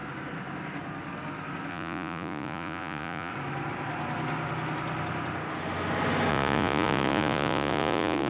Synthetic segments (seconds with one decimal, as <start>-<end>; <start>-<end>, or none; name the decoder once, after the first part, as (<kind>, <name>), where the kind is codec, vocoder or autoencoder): 1.7-3.3 (vocoder, Vocos); 6.3-8.3